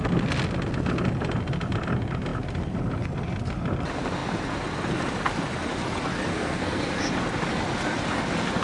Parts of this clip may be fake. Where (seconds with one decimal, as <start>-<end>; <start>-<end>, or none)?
6.3-6.9